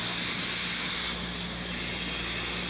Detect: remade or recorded recorded